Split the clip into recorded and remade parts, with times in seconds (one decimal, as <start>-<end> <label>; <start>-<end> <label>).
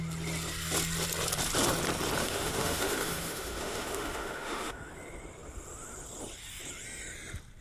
0.0-2.2 recorded; 2.2-4.9 remade; 4.9-7.6 recorded